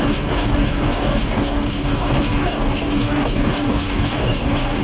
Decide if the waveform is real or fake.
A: fake